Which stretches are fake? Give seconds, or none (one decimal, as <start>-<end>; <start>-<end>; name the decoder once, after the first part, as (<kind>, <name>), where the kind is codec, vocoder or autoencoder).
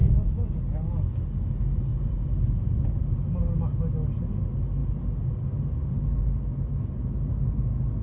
0.0-0.9 (vocoder, BigVGAN v2); 1.9-3.0